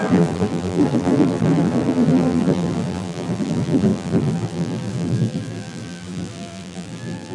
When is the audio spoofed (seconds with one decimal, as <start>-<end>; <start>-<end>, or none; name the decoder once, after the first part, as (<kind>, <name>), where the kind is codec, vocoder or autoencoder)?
0.0-7.3 (vocoder, BigVGAN v2)